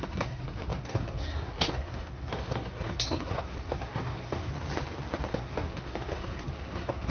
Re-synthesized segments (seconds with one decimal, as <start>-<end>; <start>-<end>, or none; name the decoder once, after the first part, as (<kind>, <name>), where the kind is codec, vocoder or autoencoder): 0.0-4.5 (codec, SNAC); 5.3-7.1